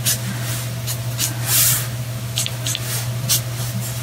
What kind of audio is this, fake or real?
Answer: real